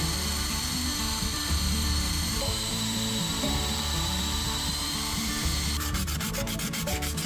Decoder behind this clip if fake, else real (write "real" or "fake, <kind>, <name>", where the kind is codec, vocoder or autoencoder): fake, vocoder, BigVGAN v2